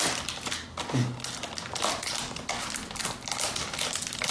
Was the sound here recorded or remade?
recorded